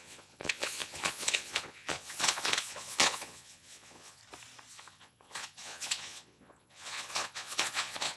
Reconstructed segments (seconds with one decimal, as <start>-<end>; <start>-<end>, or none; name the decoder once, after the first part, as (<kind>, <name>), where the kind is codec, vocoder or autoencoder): 0.0-4.2 (vocoder, Vocos); 4.7-8.2